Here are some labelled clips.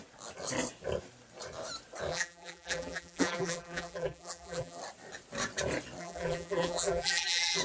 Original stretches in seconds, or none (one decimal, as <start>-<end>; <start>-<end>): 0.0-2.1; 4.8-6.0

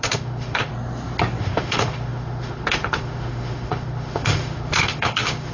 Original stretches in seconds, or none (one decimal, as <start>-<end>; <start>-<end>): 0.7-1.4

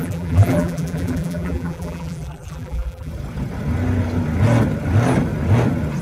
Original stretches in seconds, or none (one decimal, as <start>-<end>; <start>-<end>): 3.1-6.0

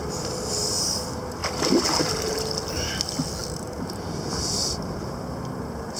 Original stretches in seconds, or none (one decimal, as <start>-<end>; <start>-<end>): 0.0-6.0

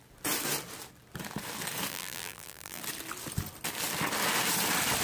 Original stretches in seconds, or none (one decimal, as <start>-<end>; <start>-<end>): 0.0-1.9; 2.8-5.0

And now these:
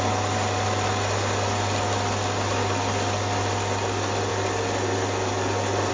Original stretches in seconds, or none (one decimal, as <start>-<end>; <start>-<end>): 0.0-5.9